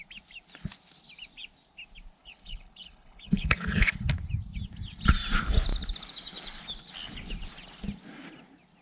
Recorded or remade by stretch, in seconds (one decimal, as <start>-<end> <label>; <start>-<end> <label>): 0.0-2.2 recorded; 2.2-4.1 remade; 4.1-8.8 recorded